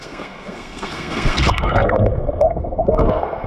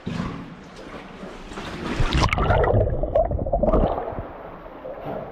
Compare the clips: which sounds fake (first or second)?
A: first